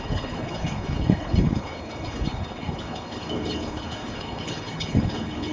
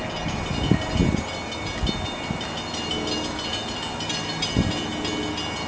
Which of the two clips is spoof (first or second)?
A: first